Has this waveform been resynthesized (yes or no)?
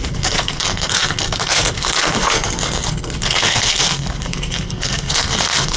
yes